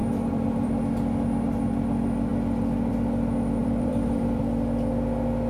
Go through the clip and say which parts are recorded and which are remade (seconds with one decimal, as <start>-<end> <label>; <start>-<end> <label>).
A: 0.0-0.7 remade; 0.7-3.6 recorded; 3.6-4.4 remade; 4.4-5.5 recorded